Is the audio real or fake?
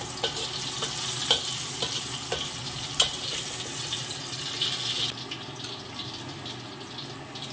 real